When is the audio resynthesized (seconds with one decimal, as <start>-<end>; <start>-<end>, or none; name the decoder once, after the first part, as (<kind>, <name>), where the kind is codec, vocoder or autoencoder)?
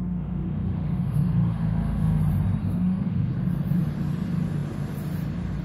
0.0-2.2 (autoencoder, DAC-VAE); 2.6-3.3